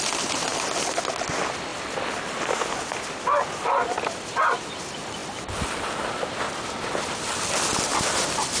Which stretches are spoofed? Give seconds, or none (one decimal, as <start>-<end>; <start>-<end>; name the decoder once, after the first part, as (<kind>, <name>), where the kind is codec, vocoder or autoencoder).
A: 0.5-1.1 (vocoder, BigVGAN v2); 1.7-2.6; 5.2-5.8